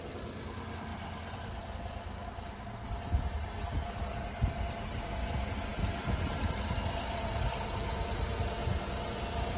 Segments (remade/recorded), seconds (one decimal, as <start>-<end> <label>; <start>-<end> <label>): 0.0-9.6 recorded